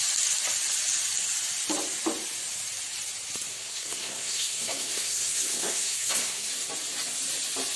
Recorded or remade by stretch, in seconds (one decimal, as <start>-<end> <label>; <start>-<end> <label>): 0.0-3.5 recorded; 3.5-6.5 remade; 6.5-7.8 recorded

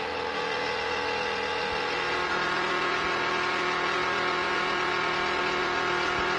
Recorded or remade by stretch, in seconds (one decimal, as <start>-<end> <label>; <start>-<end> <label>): 0.0-6.4 recorded

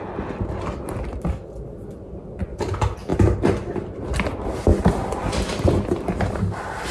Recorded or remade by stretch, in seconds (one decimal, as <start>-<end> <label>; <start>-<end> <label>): 0.0-6.9 recorded

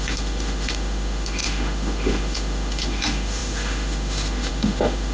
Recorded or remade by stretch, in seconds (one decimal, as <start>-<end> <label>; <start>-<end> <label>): 0.0-5.1 remade

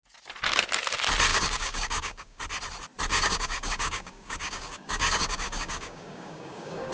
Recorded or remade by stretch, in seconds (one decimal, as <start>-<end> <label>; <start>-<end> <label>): 0.0-1.3 recorded; 1.3-2.4 remade; 2.4-3.1 recorded; 3.1-6.9 remade

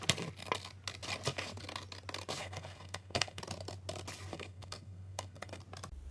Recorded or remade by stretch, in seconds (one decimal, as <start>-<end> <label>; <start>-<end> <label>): 0.0-2.4 recorded; 2.4-3.4 remade; 3.4-4.3 recorded; 4.3-5.6 remade; 5.6-6.1 recorded

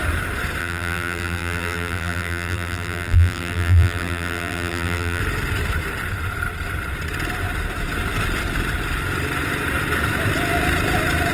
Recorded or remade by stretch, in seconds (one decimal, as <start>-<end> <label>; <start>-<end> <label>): 0.0-0.6 recorded; 0.6-5.2 remade; 5.2-11.3 recorded